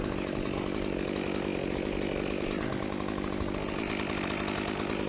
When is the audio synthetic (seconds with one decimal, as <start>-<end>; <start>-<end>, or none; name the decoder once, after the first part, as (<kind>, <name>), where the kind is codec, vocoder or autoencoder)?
none